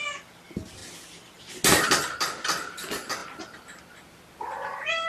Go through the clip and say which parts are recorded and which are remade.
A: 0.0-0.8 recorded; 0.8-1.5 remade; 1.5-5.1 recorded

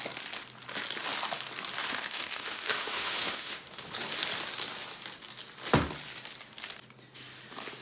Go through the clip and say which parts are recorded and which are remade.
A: 0.0-1.8 recorded; 1.8-3.8 remade; 3.8-7.8 recorded

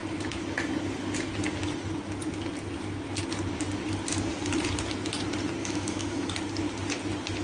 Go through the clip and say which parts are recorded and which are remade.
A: 0.0-5.6 recorded; 5.6-6.3 remade; 6.3-7.4 recorded

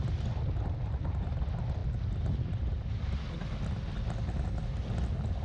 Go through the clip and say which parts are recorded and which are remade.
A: 0.0-5.4 recorded